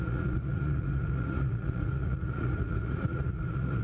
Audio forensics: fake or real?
fake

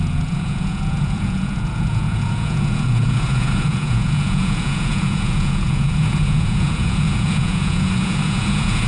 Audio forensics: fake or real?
fake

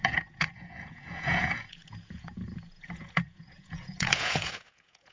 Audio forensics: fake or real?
fake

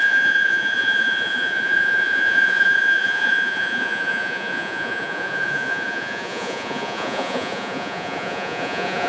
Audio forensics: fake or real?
fake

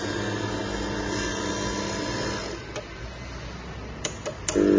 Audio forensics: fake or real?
real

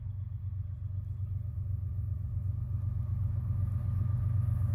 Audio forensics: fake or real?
real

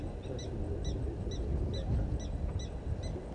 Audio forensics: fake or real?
real